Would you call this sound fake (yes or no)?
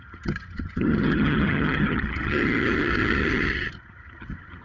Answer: yes